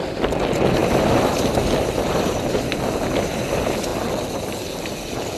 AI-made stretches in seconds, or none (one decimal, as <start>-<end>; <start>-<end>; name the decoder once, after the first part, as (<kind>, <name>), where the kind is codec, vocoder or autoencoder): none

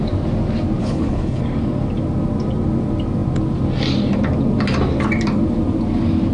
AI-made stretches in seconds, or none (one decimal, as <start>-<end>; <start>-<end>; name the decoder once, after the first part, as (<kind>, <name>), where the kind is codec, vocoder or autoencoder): 0.8-1.4 (codec, HILCodec)

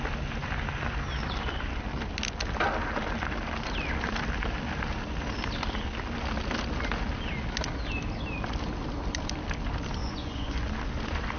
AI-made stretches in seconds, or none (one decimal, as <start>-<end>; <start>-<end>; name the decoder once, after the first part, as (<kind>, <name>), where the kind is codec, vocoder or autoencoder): 10.0-10.7 (vocoder, Vocos)